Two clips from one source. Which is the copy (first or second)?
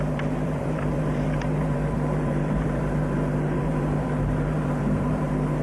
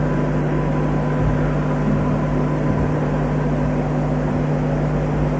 first